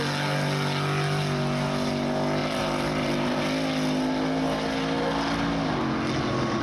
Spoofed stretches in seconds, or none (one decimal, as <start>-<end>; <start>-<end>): 2.4-3.4